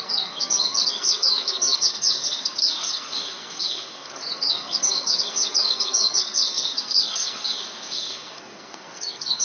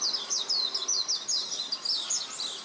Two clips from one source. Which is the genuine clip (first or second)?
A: second